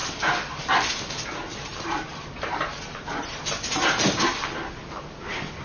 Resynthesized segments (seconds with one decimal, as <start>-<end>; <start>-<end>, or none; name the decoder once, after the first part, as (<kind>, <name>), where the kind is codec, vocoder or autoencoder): 1.5-4.8 (vocoder, BigVGAN v2)